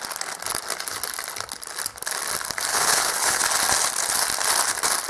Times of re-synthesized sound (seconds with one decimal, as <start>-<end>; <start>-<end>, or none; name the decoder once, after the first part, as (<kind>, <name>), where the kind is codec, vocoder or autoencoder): 2.7-3.4 (codec, HILCodec)